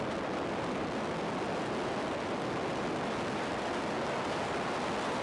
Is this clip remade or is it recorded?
recorded